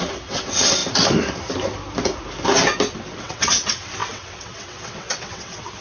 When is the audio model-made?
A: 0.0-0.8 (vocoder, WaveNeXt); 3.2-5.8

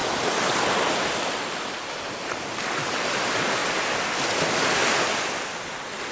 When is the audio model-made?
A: none

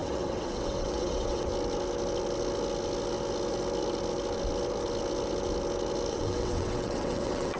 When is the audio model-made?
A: 0.0-1.5 (vocoder, WaveNeXt); 6.1-7.6

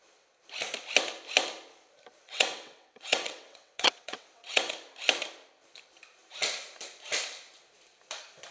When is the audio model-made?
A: 2.2-4.7 (vocoder, WaveNeXt)

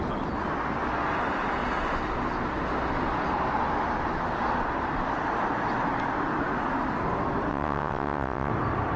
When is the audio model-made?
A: 7.5-8.5 (vocoder, WaveNeXt)